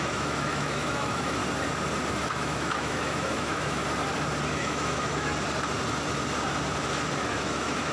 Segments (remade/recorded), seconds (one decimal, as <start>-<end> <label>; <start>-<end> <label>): 0.0-1.4 remade; 1.4-2.3 recorded; 2.3-3.8 remade; 3.8-4.5 recorded; 4.5-5.3 remade; 5.3-7.3 recorded; 7.3-7.9 remade